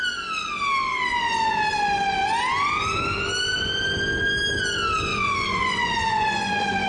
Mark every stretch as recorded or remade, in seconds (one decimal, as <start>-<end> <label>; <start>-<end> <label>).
0.0-5.1 recorded; 5.1-6.9 remade